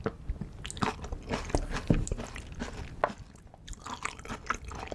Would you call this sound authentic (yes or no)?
yes